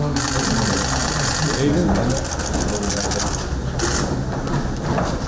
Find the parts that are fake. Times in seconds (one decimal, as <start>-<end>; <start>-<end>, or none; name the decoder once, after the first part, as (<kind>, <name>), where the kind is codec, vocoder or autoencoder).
none